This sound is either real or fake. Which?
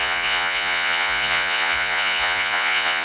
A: fake